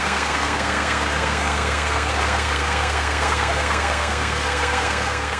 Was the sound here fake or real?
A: fake